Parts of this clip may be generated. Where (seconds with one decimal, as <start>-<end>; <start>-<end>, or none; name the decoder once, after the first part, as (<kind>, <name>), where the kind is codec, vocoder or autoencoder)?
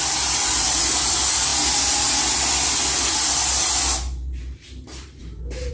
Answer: 5.2-5.7 (vocoder, BigVGAN v2)